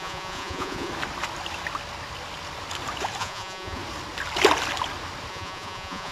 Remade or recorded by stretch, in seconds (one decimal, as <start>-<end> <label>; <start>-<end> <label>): 0.0-0.9 remade; 0.9-3.2 recorded; 3.2-3.8 remade; 3.8-5.3 recorded; 5.3-6.1 remade